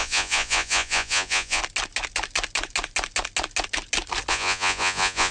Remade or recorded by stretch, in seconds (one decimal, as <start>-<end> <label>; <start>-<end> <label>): 0.0-1.6 remade; 1.6-4.3 recorded; 4.3-5.3 remade